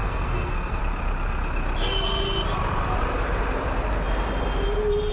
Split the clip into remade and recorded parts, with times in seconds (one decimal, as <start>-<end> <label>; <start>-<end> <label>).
0.0-0.8 remade; 0.8-5.1 recorded